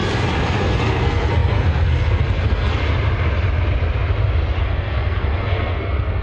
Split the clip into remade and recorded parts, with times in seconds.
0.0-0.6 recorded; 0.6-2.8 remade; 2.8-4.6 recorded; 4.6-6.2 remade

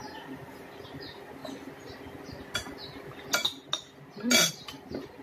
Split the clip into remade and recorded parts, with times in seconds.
0.0-0.8 remade; 0.8-5.2 recorded

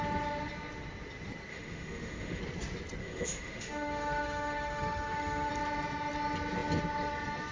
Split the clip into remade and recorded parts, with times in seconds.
0.0-1.5 recorded; 1.5-2.4 remade; 2.4-3.0 recorded; 3.0-5.5 remade; 5.5-7.5 recorded

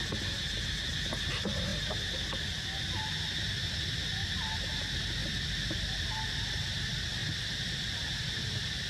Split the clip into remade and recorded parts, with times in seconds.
0.0-8.9 recorded

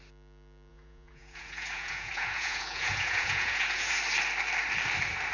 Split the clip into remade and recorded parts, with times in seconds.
0.0-0.7 recorded; 0.7-3.9 remade; 3.9-5.3 recorded

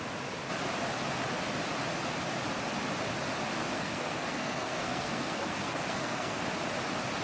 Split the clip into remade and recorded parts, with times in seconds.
0.0-3.6 recorded; 3.6-6.4 remade; 6.4-7.2 recorded

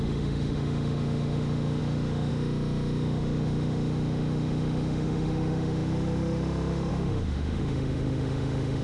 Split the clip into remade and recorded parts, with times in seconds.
0.0-8.8 remade

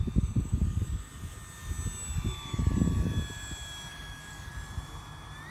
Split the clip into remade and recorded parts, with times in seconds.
0.0-1.1 remade; 1.1-3.9 recorded; 3.9-4.5 remade; 4.5-5.5 recorded